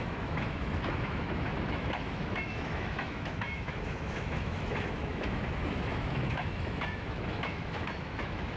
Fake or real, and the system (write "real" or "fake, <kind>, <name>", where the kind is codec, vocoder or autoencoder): fake, autoencoder, DAC-VAE